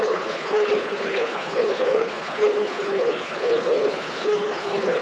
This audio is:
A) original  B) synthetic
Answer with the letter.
B